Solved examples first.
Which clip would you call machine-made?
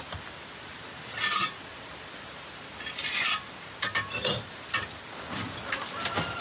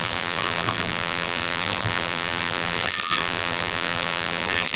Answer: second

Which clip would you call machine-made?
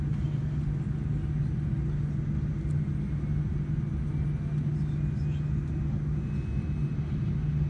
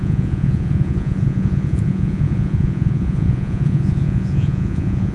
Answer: second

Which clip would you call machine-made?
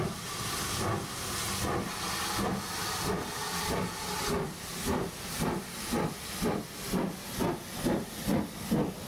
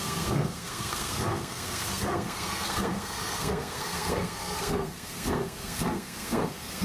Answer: second